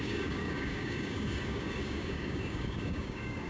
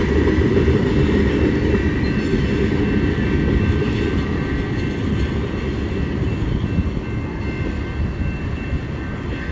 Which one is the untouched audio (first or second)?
second